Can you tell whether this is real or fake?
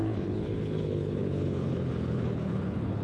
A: fake